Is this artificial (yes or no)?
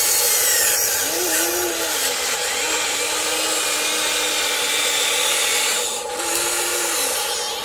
no